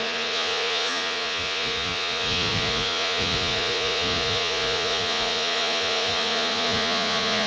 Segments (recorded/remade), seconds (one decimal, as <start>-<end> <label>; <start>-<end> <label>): 0.0-7.5 remade